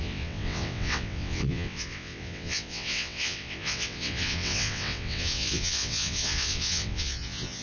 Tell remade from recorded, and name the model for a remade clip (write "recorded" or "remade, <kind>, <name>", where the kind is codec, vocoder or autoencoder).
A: remade, vocoder, WaveNeXt